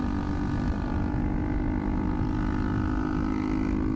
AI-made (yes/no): no